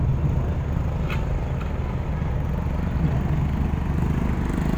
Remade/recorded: recorded